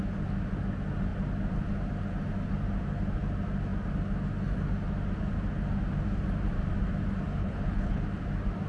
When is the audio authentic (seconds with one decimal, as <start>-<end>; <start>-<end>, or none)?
0.0-7.4; 8.0-8.7